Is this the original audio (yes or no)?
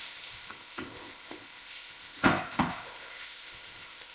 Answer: no